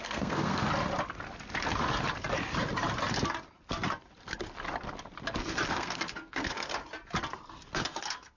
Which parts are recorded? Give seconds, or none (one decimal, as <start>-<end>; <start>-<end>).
0.7-5.7; 6.7-7.8